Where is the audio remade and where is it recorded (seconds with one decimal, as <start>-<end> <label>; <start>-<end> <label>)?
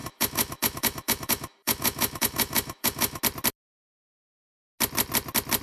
0.0-3.2 remade; 3.2-5.6 recorded